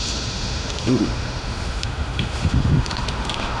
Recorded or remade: remade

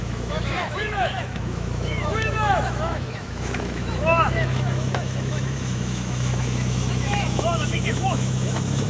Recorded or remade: remade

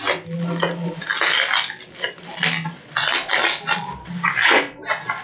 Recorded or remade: recorded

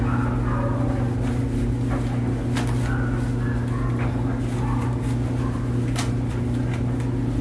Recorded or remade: recorded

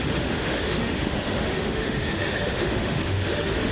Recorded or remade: remade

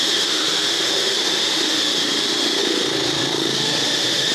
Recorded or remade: remade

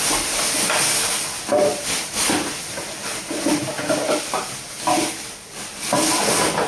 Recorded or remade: recorded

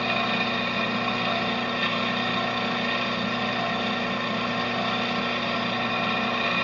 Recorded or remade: recorded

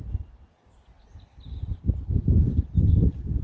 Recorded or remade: recorded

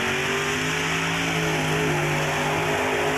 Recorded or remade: recorded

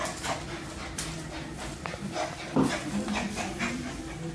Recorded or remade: recorded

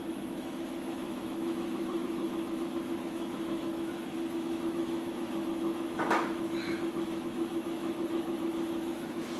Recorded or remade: remade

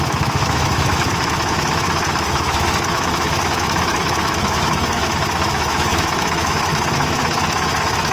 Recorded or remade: remade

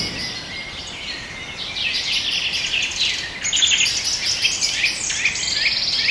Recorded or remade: recorded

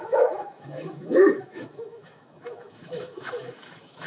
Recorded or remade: remade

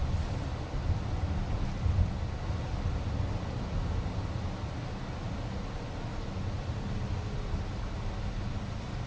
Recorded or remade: recorded